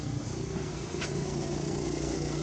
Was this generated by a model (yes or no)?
yes